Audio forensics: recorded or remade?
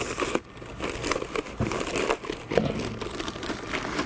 recorded